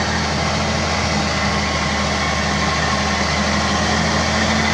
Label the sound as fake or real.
real